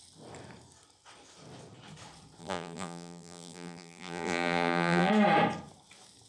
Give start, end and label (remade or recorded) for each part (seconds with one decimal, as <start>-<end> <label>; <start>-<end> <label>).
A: 0.0-2.4 recorded; 2.4-5.1 remade; 5.1-6.3 recorded